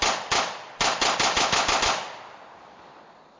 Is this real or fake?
real